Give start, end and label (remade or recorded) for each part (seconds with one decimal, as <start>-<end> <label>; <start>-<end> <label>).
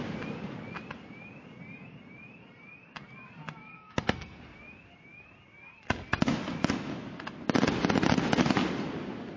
0.0-3.7 recorded; 3.7-4.4 remade; 4.4-9.4 recorded